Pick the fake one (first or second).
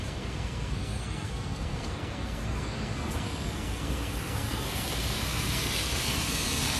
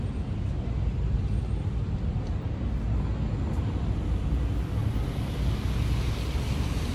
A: first